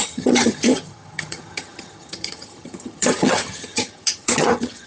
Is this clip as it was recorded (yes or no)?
no